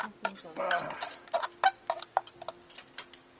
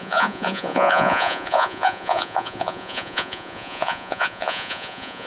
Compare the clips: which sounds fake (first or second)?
second